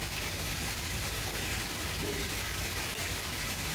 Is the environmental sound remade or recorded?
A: remade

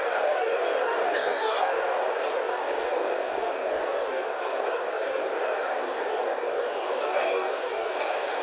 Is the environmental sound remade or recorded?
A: remade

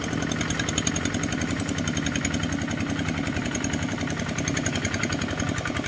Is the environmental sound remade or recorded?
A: recorded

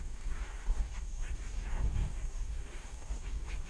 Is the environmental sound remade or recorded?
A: remade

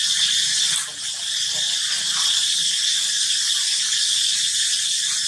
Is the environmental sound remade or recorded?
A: recorded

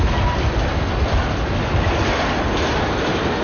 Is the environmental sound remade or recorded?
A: recorded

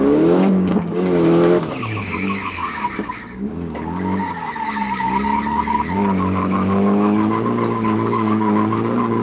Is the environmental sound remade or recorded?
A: remade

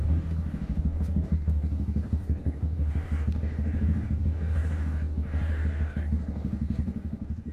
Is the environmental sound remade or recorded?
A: remade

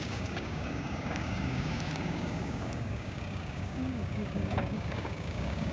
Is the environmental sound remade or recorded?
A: remade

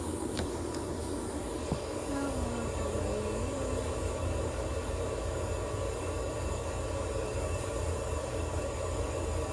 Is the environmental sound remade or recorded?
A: remade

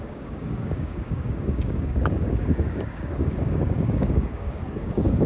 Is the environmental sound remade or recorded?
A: remade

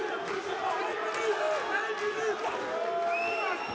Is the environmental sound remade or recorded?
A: recorded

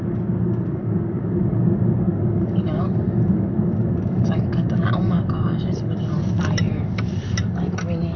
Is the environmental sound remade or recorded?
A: remade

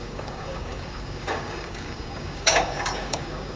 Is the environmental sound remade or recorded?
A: remade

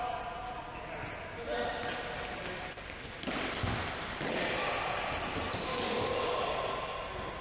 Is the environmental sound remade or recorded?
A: recorded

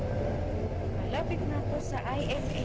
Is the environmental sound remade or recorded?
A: recorded